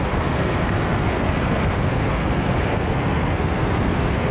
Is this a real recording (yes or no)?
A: no